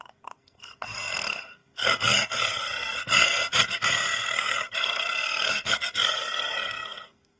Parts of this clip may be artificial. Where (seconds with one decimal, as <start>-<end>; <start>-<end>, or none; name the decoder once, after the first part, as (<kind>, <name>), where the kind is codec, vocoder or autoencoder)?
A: 0.0-7.4 (codec, SNAC)